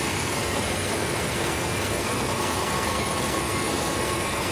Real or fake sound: fake